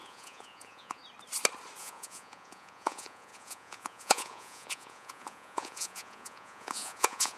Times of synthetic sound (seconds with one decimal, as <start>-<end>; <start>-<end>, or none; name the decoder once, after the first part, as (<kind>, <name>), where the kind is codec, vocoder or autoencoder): 0.0-1.0 (vocoder, Vocos); 1.8-7.4